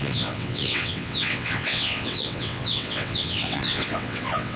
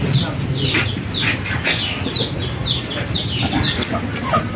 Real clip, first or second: second